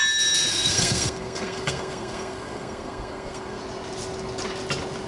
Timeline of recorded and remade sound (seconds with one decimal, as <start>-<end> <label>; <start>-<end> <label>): 0.0-0.5 recorded; 0.5-3.6 remade; 3.6-5.1 recorded